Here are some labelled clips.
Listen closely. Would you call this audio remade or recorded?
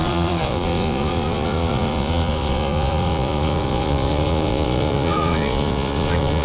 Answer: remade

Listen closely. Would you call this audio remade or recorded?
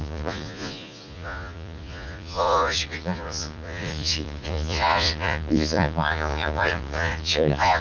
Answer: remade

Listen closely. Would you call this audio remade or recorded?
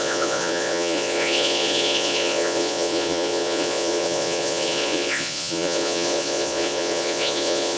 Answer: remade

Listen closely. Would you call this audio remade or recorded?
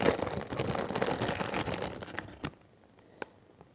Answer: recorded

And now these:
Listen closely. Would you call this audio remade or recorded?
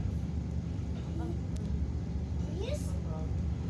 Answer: recorded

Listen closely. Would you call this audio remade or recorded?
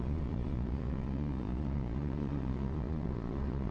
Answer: remade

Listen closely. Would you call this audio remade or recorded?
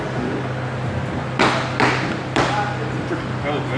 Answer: recorded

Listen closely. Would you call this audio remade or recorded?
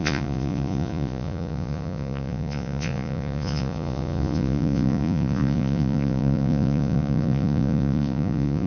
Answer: remade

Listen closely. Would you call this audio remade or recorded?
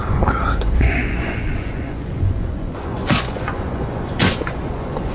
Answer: remade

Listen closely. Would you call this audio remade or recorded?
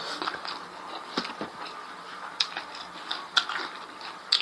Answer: recorded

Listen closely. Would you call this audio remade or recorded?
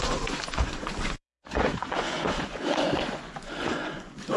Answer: remade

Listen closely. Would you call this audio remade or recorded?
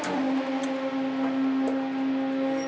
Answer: recorded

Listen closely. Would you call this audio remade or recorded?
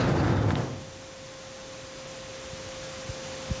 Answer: recorded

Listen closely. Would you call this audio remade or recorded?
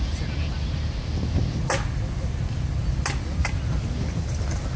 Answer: recorded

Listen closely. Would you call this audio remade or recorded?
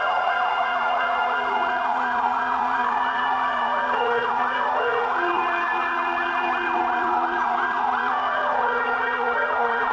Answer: remade